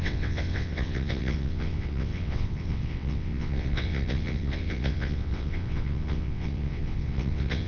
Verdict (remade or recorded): remade